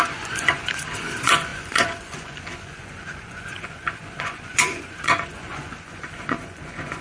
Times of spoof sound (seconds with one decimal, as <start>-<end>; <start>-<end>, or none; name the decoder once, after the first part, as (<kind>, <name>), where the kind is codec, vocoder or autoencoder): 0.0-7.0 (vocoder, Vocos)